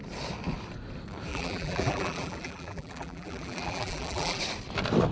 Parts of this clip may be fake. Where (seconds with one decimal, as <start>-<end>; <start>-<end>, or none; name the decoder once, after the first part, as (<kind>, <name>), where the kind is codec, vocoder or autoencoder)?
1.3-4.4 (vocoder, BigVGAN v2)